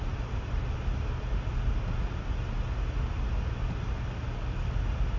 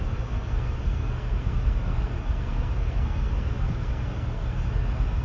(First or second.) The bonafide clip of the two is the first